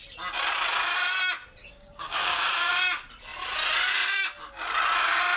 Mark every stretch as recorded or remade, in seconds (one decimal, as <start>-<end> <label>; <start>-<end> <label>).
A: 0.0-1.6 recorded; 1.6-2.7 remade; 2.7-5.4 recorded